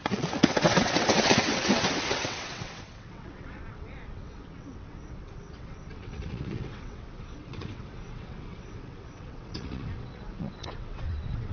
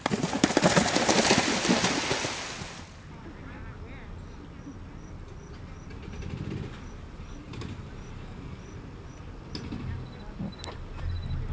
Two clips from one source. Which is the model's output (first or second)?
first